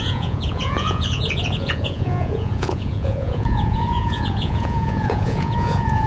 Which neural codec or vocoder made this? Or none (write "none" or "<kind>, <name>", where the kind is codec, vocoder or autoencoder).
vocoder, Vocos